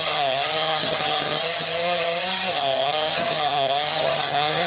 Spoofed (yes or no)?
yes